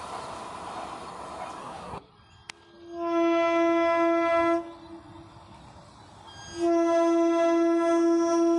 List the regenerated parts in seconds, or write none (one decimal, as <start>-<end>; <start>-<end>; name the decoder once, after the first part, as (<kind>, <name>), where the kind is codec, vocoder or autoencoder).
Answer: 1.6-2.1 (codec, SNAC)